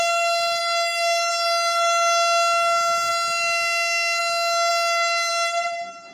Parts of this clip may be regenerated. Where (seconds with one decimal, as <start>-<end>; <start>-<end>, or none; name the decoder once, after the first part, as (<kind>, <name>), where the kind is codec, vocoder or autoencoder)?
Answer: 0.6-1.3 (autoencoder, DAC-VAE); 4.7-5.3